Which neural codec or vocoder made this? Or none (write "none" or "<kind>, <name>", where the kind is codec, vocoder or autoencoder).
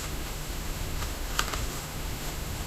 autoencoder, DAC-VAE